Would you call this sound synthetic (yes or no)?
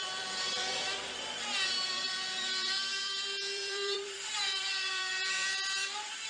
yes